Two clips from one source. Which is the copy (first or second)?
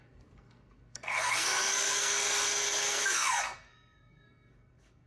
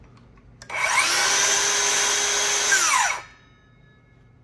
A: first